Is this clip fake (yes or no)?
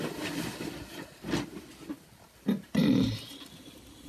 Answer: yes